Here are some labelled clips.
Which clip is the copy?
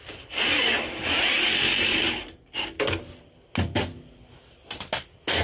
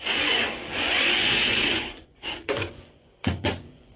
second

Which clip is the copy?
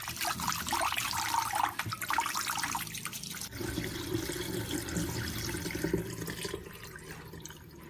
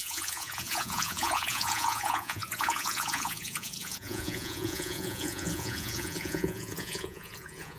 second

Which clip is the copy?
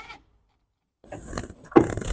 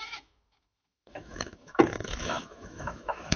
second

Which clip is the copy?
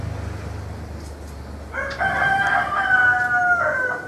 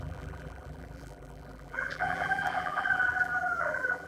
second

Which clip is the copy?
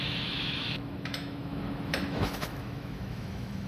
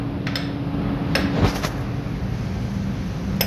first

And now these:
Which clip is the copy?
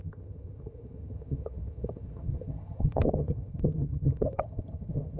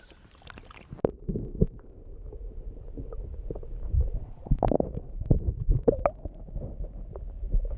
first